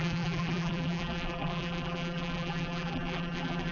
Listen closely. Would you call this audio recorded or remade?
remade